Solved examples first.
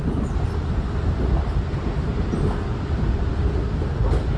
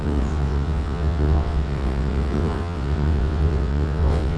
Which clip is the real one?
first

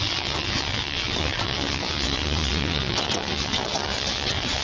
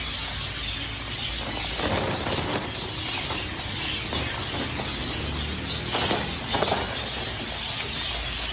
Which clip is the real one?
second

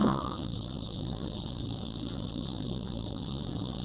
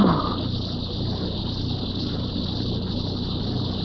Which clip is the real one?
second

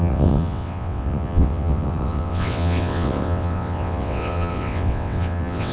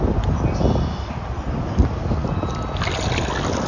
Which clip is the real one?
second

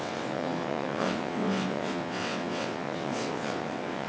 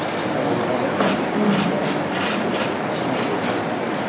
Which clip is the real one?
second